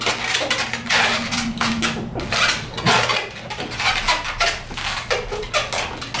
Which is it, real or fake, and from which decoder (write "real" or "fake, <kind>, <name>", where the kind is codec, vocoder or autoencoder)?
real